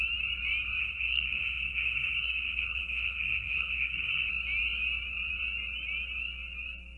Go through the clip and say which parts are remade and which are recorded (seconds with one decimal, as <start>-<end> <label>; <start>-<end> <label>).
0.0-0.8 recorded; 0.8-4.3 remade; 4.3-7.0 recorded